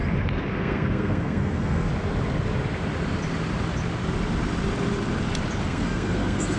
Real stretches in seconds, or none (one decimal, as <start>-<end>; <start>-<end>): 0.0-0.5; 1.9-5.6